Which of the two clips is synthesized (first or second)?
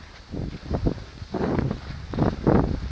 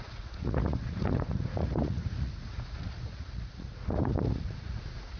second